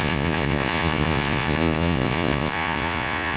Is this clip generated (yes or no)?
yes